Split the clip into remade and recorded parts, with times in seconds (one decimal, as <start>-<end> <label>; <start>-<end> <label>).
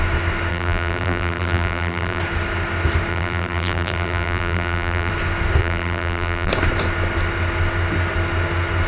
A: 0.0-0.5 recorded; 0.5-2.2 remade; 2.2-3.1 recorded; 3.1-5.1 remade; 5.1-5.6 recorded; 5.6-6.5 remade; 6.5-8.9 recorded